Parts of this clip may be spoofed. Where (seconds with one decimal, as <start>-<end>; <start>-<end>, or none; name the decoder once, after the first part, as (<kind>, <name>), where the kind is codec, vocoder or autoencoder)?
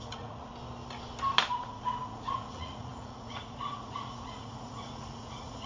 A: 0.0-0.5 (vocoder, Vocos); 1.5-5.7